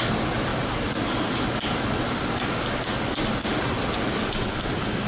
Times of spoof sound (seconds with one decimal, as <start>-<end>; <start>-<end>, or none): none